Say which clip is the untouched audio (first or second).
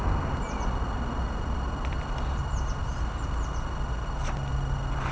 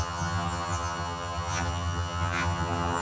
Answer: first